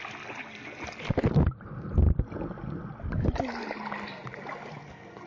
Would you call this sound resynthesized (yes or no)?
no